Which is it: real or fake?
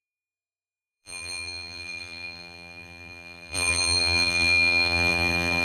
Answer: fake